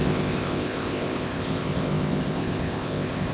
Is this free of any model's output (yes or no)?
no